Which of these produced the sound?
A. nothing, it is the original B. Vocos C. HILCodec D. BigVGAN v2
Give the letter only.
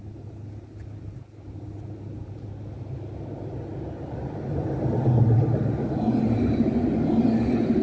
A